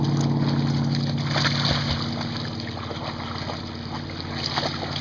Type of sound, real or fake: real